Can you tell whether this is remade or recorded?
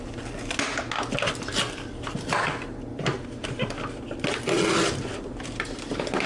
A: recorded